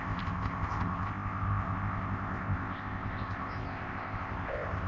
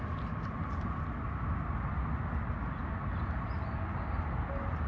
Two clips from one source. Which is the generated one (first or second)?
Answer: first